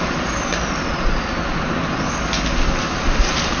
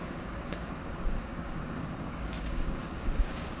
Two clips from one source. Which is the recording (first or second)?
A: first